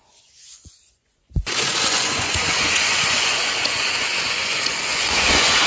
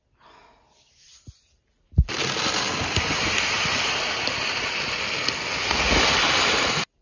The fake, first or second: first